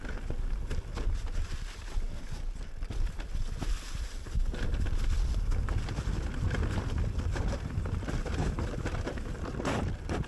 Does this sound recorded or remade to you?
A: recorded